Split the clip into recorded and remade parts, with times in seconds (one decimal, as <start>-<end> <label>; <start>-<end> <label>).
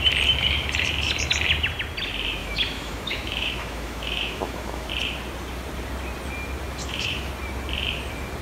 0.0-2.4 recorded; 2.4-4.9 remade; 4.9-6.8 recorded; 6.8-7.3 remade; 7.3-8.4 recorded